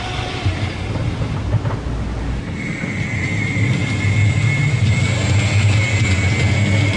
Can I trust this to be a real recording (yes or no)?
yes